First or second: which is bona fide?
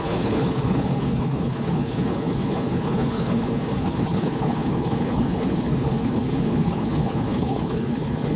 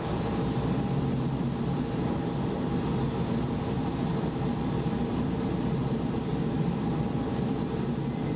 second